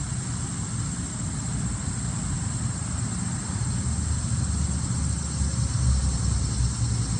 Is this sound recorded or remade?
recorded